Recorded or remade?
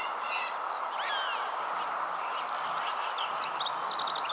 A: recorded